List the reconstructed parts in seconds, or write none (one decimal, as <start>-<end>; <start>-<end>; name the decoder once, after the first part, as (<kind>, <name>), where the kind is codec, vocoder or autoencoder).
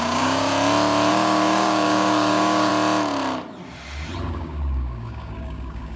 0.0-0.5 (codec, DAC); 1.1-2.7; 4.3-6.0